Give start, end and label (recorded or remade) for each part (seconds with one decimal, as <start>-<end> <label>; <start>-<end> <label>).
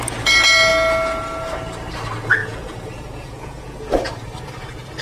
0.0-2.4 recorded; 2.4-3.9 remade; 3.9-5.0 recorded